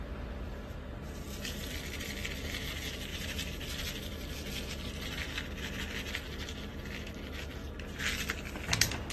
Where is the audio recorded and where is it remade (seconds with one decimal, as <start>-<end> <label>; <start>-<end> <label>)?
0.0-3.1 recorded; 3.1-5.3 remade; 5.3-9.1 recorded